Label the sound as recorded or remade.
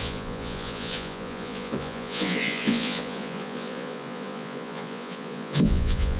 remade